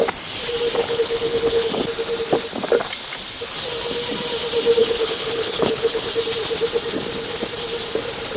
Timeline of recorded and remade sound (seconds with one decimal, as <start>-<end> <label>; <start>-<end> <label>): 0.0-0.8 recorded; 0.8-1.7 remade; 1.7-4.8 recorded; 4.8-6.1 remade; 6.1-8.4 recorded